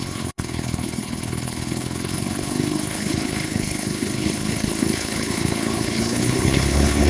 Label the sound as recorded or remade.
remade